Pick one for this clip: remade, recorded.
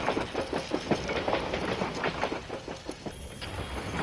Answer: recorded